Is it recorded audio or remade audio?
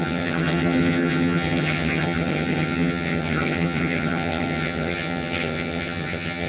remade